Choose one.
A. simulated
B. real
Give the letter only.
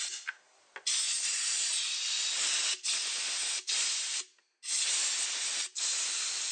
B